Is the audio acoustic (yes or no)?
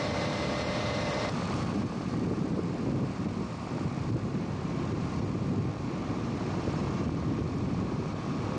no